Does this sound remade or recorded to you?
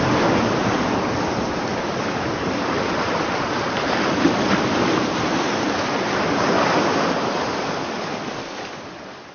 remade